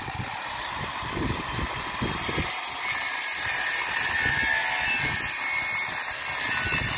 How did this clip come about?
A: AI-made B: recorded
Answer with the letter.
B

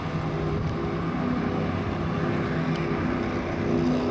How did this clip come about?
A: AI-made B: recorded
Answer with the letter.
B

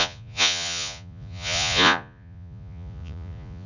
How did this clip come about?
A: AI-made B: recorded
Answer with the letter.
A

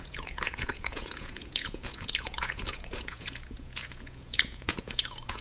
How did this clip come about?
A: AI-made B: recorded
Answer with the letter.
A